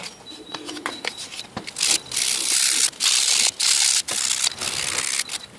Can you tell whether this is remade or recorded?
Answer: recorded